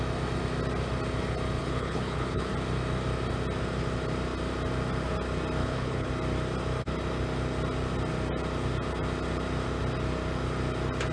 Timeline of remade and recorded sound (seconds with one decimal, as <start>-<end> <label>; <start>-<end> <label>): 0.0-1.6 recorded; 1.6-2.5 remade; 2.5-5.6 recorded; 5.6-6.1 remade; 6.1-11.1 recorded